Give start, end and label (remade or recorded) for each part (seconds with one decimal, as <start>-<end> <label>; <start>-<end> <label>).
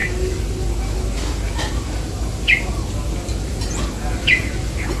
0.0-5.0 recorded